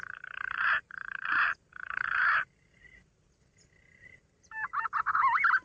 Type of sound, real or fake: fake